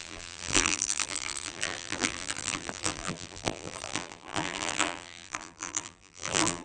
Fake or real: fake